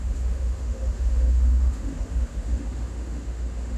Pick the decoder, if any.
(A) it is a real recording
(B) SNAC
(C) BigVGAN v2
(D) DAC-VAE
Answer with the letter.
D